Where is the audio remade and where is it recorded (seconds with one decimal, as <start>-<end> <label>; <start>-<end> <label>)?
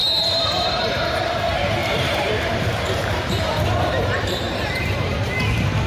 0.0-1.4 remade; 1.4-1.8 recorded; 1.8-5.3 remade; 5.3-5.9 recorded